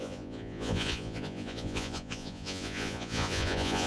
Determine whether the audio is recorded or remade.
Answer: remade